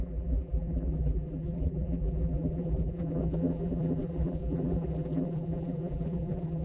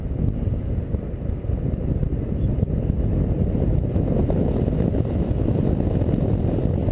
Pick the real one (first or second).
second